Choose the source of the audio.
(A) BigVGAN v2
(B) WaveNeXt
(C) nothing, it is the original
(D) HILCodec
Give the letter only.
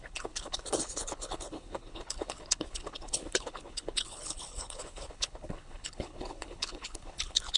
D